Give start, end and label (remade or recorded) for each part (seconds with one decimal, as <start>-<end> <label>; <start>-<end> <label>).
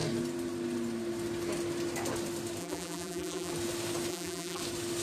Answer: 0.0-2.6 recorded; 2.6-3.5 remade; 3.5-4.1 recorded; 4.1-4.6 remade; 4.6-5.0 recorded